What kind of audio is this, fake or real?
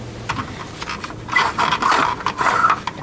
real